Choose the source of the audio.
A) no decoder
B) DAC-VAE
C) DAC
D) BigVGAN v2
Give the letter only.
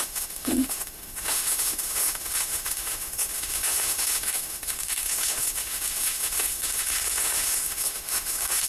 B